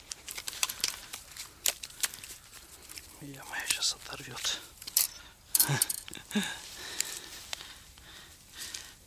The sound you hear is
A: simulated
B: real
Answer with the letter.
A